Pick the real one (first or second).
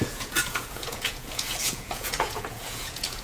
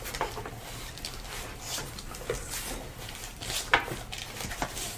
second